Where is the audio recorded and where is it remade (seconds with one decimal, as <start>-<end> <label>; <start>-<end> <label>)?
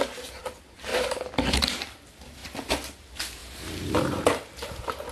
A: 0.0-5.1 recorded